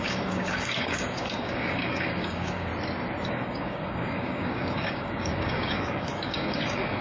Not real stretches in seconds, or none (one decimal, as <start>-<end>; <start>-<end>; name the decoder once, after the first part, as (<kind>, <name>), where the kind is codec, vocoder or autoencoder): 0.0-2.7 (codec, DAC); 3.3-7.0